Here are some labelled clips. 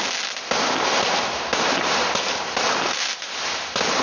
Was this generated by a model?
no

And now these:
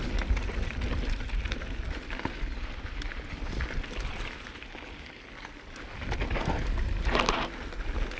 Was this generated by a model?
no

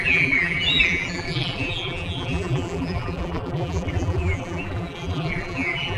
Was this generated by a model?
yes